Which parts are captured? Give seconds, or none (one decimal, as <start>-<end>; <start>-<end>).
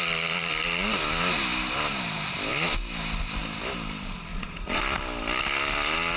0.0-4.3; 4.8-6.2